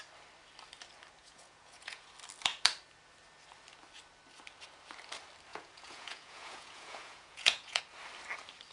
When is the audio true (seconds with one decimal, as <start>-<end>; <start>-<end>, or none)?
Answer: 0.0-1.2; 2.1-5.5; 7.8-8.7